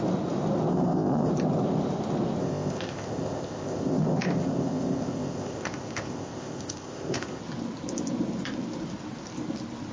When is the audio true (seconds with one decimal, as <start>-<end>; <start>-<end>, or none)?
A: 0.0-0.7; 1.3-2.4; 7.4-9.9